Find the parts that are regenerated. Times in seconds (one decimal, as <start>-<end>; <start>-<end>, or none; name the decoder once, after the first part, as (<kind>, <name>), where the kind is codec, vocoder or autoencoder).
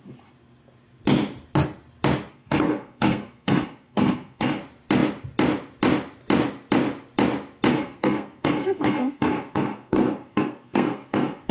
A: 2.3-4.6 (codec, SNAC); 7.7-11.5